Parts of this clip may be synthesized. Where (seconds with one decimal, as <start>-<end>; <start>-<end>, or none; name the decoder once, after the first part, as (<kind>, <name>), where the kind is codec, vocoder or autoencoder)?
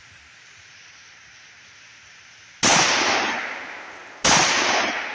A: none